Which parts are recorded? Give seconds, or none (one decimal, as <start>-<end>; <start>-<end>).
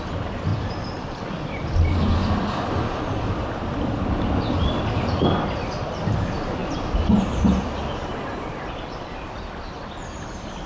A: 0.0-0.5; 1.2-2.2; 4.2-6.6; 9.2-10.7